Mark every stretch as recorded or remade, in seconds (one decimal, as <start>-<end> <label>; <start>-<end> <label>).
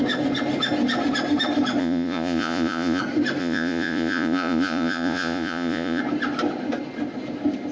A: 0.0-1.8 recorded; 1.8-3.0 remade; 3.0-3.4 recorded; 3.4-6.0 remade; 6.0-7.7 recorded